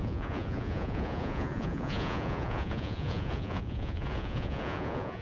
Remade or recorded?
remade